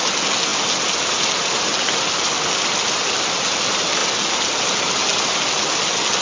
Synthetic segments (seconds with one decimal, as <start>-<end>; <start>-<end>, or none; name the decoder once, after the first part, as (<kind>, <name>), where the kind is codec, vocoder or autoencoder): none